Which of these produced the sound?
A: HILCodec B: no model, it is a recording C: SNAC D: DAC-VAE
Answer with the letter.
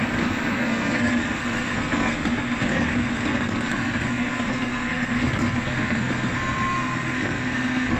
C